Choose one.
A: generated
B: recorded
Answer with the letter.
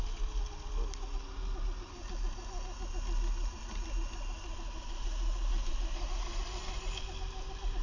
B